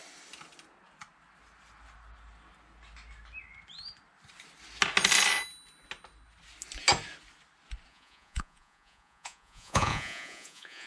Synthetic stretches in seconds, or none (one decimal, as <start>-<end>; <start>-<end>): 7.9-10.9

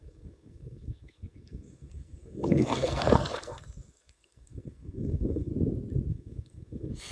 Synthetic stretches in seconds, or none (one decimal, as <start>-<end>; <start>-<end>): 0.0-5.5; 6.1-7.1

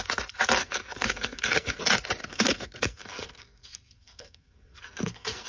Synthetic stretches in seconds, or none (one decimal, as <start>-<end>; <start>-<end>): 0.6-1.8; 2.2-5.5

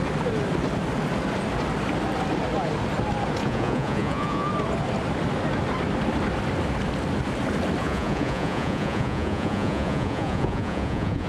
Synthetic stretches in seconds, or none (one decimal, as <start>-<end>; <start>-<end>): 3.4-4.5; 7.8-11.3

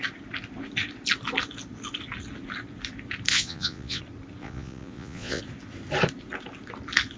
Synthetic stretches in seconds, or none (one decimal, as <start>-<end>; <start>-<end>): 3.3-4.0; 4.4-5.4

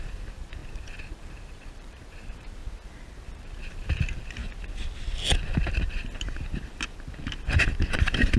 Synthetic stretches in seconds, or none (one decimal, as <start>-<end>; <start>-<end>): 0.0-2.6; 3.3-4.4; 8.0-8.4